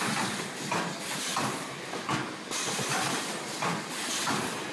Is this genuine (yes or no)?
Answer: yes